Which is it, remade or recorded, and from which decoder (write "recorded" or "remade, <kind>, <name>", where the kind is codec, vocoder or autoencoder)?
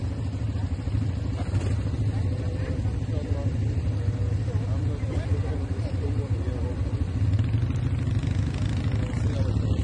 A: recorded